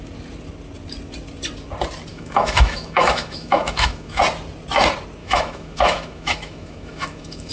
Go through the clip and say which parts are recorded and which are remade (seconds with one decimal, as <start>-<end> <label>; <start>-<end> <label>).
0.0-2.1 recorded; 2.1-4.2 remade; 4.2-5.2 recorded; 5.2-7.5 remade